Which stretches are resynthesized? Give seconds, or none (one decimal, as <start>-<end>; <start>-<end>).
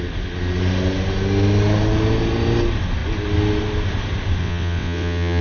4.4-5.4